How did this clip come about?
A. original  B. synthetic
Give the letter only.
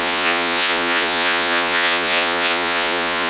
B